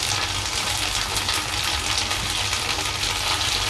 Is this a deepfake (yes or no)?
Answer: no